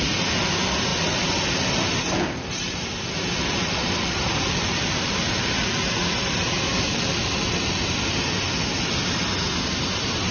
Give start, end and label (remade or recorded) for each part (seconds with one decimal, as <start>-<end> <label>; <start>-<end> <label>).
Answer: 0.0-0.9 recorded; 0.9-5.9 remade; 5.9-6.7 recorded; 6.7-8.4 remade; 8.4-10.3 recorded

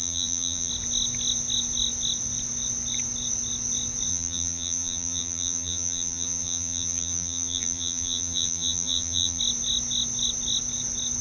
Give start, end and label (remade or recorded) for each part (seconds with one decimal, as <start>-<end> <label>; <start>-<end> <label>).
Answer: 0.0-0.7 remade; 0.7-4.1 recorded; 4.1-9.4 remade; 9.4-11.2 recorded

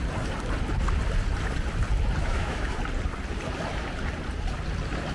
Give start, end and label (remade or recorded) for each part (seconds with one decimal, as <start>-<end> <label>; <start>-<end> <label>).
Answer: 0.0-2.2 recorded; 2.2-2.8 remade; 2.8-5.1 recorded